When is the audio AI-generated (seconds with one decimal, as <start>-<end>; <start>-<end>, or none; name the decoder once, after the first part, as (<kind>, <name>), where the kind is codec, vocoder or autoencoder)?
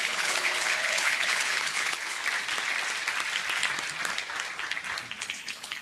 0.0-2.2 (codec, HILCodec); 5.2-5.8